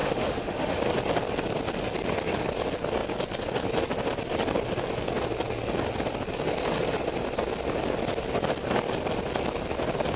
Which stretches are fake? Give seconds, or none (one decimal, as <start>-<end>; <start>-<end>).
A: 0.0-0.8